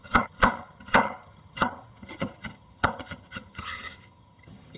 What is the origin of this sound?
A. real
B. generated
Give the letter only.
B